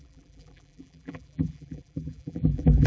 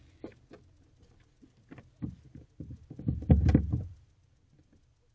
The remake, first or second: first